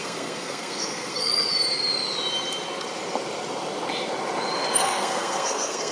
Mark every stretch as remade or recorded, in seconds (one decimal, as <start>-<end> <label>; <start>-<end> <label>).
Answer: 0.0-1.3 remade; 1.3-4.8 recorded; 4.8-5.9 remade